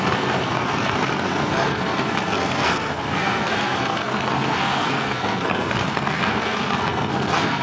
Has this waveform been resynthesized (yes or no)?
yes